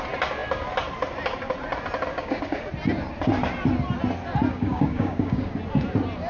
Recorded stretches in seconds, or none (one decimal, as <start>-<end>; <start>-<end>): 0.0-2.1; 2.7-4.5; 5.5-6.3